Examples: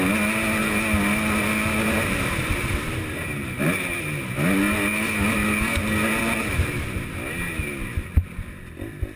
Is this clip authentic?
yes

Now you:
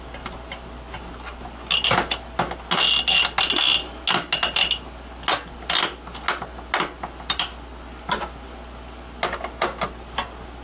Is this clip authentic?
yes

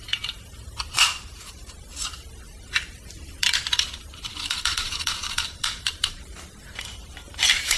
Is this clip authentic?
no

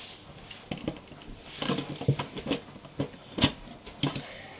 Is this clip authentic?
yes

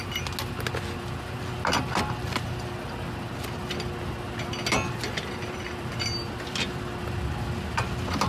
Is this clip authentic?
yes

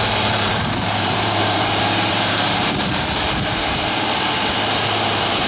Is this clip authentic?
no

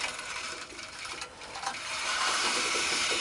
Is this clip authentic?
no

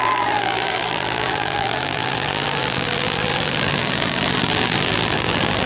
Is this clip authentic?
no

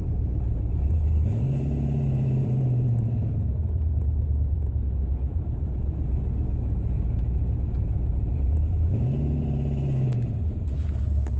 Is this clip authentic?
no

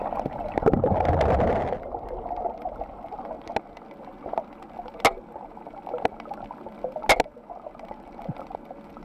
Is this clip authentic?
yes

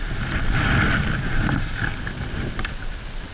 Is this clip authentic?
yes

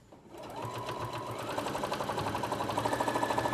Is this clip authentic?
yes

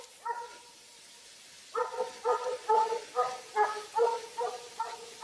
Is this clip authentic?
yes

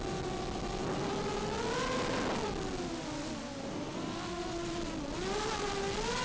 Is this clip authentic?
yes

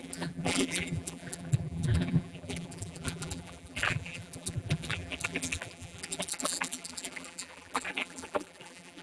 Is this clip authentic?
no